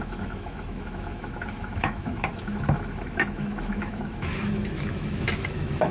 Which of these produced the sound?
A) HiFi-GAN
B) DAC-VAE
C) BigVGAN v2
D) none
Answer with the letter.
B